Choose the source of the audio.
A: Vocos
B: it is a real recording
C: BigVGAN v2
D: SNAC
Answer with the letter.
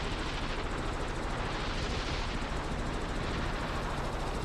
B